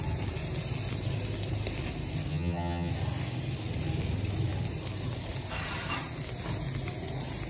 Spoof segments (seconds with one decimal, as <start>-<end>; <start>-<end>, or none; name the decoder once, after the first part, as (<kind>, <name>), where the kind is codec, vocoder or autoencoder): 2.3-2.9 (vocoder, HiFi-GAN)